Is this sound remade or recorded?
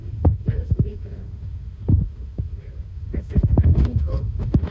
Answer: remade